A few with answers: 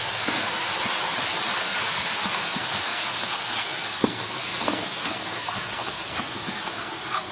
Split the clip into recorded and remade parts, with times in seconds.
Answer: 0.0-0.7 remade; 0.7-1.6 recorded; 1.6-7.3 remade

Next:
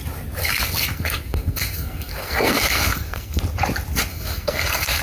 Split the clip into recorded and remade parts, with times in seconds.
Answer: 0.0-0.4 recorded; 0.4-3.4 remade; 3.4-4.1 recorded; 4.1-5.0 remade

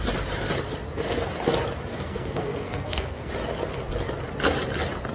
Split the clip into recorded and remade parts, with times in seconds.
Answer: 0.0-1.9 recorded; 1.9-3.3 remade; 3.3-5.1 recorded